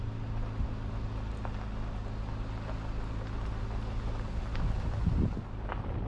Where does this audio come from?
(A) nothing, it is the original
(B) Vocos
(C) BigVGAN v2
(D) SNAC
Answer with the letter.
A